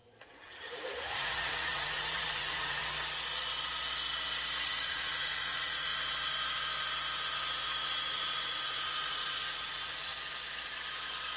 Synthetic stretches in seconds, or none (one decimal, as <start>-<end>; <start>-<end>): 0.0-2.8; 4.7-5.9; 8.1-10.1